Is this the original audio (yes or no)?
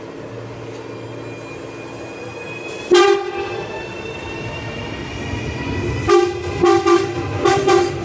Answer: yes